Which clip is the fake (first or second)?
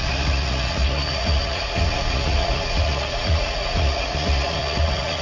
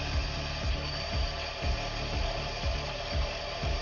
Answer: first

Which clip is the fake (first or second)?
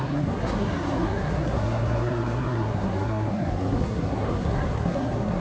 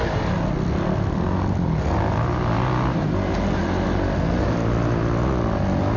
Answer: first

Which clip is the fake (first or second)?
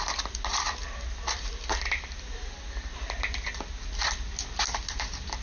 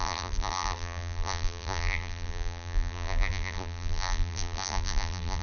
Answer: second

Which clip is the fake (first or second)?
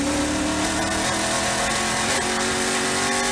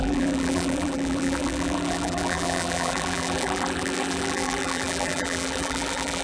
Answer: second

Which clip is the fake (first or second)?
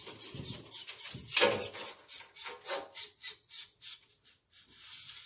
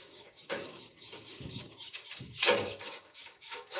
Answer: second